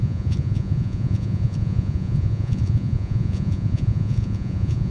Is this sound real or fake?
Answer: fake